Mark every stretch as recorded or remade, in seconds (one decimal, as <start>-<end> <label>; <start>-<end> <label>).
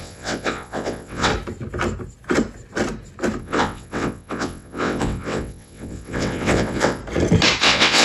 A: 0.0-1.3 remade; 1.3-3.4 recorded; 3.4-7.0 remade; 7.0-7.6 recorded; 7.6-8.0 remade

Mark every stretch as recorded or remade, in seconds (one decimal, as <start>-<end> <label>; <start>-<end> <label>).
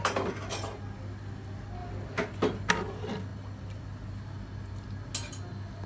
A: 0.0-5.9 recorded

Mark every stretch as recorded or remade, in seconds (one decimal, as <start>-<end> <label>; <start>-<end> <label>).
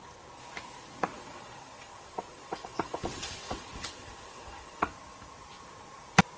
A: 0.0-1.1 recorded; 1.1-4.9 remade; 4.9-6.4 recorded